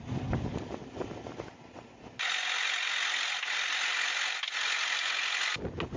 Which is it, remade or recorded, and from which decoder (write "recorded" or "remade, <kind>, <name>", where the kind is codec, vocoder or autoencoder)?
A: recorded